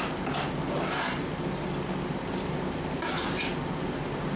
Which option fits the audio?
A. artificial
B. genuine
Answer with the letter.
B